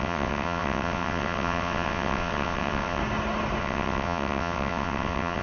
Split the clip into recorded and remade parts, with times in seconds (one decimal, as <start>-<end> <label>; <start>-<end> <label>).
0.0-3.0 remade; 3.0-3.6 recorded; 3.6-5.4 remade